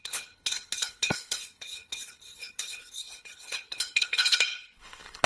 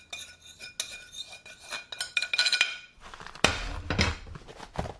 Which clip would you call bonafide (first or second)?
second